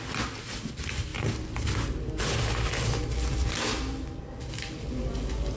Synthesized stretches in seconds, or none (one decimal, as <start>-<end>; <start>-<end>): none